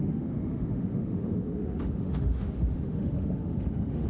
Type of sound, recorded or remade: remade